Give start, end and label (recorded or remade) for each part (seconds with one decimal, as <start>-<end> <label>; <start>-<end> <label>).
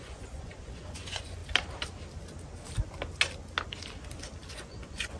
0.0-1.4 remade; 1.4-4.5 recorded; 4.5-5.2 remade